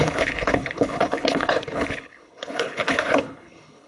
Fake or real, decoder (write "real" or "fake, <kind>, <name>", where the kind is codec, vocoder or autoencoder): fake, codec, HILCodec